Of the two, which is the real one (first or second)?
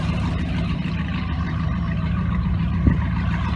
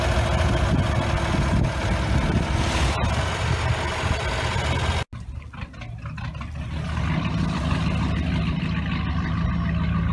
second